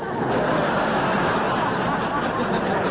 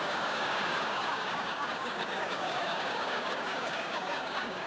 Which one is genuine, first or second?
first